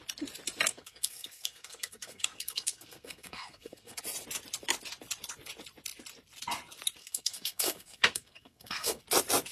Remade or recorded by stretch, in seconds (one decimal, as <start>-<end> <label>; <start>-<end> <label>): 0.0-0.7 recorded; 0.7-4.0 remade; 4.0-7.0 recorded; 7.0-9.0 remade; 9.0-9.5 recorded